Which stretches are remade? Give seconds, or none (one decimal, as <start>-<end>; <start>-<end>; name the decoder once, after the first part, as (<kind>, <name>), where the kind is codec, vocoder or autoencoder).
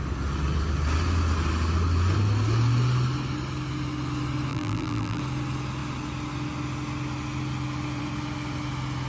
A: 4.5-5.2 (vocoder, BigVGAN v2)